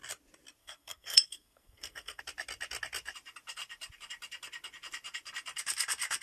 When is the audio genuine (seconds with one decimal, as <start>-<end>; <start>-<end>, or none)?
0.0-0.6; 2.2-6.2